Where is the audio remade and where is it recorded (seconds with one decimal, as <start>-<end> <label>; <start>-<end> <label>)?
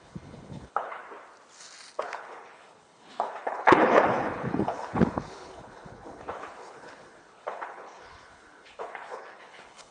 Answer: 0.0-1.0 remade; 1.0-2.0 recorded; 2.0-9.9 remade